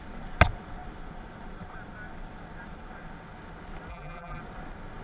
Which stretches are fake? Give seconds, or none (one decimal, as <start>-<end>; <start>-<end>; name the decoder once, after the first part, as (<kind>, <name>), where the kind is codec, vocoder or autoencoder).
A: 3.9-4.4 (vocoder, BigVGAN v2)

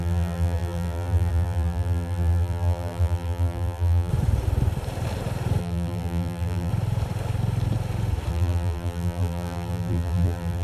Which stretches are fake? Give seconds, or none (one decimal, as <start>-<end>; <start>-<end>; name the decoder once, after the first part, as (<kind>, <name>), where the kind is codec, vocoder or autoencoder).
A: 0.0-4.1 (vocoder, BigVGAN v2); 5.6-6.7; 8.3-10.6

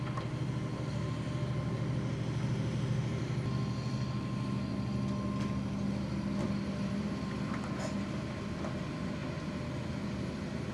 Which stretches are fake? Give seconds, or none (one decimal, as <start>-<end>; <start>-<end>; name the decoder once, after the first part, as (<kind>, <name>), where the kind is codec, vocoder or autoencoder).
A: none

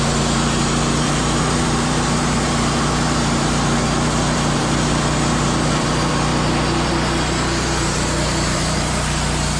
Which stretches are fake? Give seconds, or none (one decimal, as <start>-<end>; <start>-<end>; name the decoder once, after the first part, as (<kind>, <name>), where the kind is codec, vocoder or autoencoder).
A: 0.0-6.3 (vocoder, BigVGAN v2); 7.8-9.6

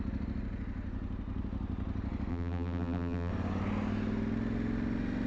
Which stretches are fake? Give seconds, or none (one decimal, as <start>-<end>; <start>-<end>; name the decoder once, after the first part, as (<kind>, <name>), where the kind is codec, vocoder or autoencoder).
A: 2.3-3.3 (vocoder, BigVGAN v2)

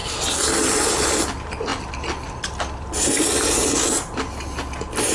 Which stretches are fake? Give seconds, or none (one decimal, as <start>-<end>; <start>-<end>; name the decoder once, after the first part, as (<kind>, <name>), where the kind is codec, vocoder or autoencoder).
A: 1.1-1.7 (vocoder, BigVGAN v2)

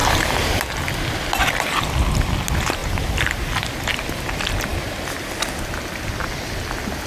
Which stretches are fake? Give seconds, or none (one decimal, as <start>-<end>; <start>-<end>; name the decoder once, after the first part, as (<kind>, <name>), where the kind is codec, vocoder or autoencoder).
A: 0.0-0.6 (vocoder, BigVGAN v2); 2.8-3.7

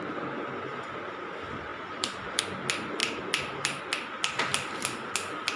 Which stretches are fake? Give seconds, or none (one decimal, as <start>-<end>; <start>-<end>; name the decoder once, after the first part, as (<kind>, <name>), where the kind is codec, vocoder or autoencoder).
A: 1.7-2.4 (vocoder, BigVGAN v2); 3.0-3.8